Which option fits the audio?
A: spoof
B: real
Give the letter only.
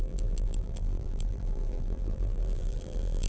A